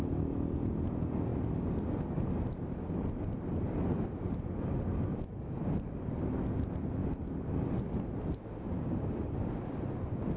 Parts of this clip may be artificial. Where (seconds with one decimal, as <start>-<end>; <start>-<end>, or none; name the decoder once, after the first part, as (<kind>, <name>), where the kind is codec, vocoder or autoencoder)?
none